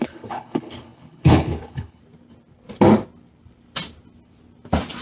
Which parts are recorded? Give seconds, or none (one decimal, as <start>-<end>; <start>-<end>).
2.0-5.0